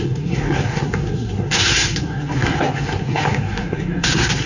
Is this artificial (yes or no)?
yes